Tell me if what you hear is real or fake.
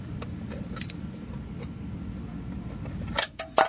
real